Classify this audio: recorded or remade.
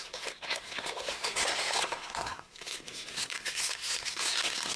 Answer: remade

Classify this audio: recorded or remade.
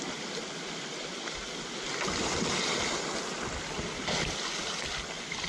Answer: recorded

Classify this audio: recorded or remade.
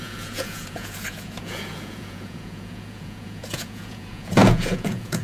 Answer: remade